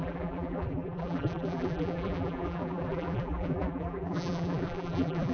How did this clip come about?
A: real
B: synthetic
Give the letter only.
B